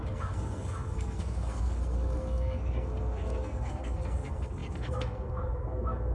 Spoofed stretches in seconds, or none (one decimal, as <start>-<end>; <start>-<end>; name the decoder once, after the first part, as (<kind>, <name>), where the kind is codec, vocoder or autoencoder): 0.0-6.1 (codec, SNAC)